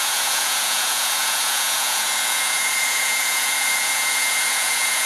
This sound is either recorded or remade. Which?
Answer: remade